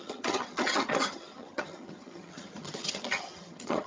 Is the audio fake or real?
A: fake